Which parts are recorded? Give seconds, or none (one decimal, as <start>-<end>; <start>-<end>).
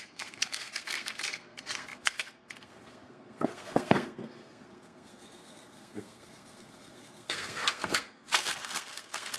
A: none